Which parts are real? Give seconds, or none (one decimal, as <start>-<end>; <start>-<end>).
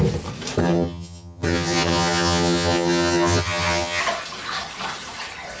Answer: 0.0-0.6; 4.0-5.6